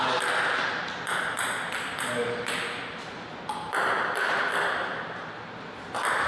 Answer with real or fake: real